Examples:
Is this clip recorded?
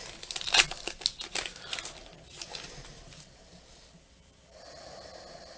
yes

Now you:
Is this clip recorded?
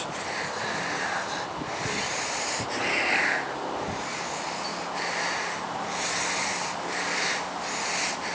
yes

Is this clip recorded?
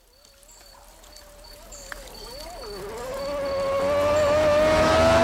yes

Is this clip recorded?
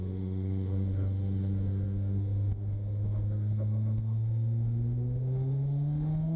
no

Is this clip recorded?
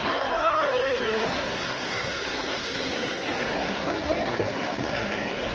no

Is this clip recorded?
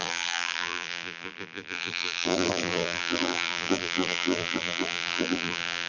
no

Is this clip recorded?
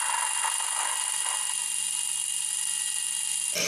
yes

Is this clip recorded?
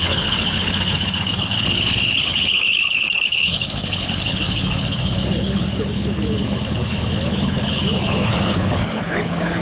no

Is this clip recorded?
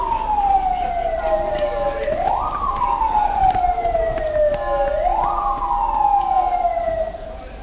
yes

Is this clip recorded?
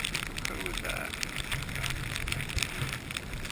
yes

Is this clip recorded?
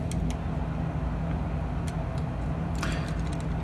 yes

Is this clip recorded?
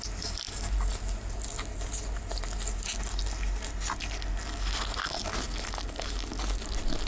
yes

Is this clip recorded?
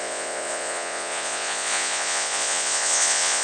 no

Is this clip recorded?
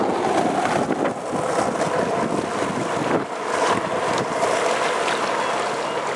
yes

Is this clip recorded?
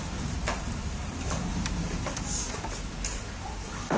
no